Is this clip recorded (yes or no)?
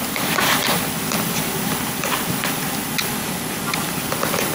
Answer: yes